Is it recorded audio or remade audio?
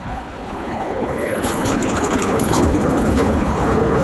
remade